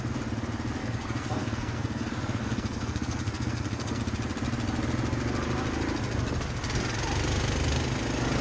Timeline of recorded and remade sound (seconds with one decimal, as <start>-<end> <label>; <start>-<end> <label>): 0.0-0.8 recorded; 0.8-4.0 remade; 4.0-8.4 recorded